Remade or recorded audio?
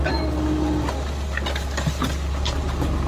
recorded